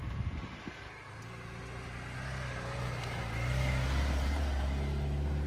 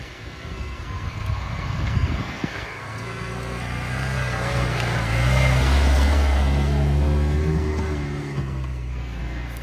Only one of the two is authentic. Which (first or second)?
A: first